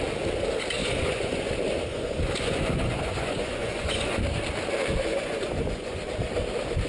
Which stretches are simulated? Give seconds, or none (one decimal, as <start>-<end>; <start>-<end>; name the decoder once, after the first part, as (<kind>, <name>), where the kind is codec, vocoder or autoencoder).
0.8-1.5 (vocoder, Vocos); 1.9-4.2; 5.1-6.0